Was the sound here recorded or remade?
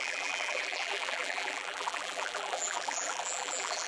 remade